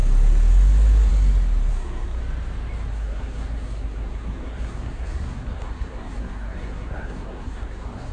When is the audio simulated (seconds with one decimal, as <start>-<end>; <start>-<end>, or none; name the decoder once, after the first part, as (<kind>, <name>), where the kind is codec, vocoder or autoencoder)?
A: 1.7-2.2 (codec, SNAC); 2.9-8.1